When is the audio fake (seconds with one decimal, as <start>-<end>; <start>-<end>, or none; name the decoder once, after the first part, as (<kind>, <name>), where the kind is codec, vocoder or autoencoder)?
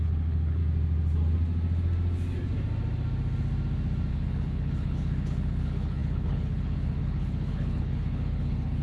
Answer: 0.0-0.6 (codec, HILCodec); 4.1-8.8